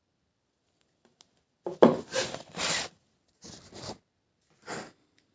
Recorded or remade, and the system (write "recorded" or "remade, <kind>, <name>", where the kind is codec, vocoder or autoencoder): recorded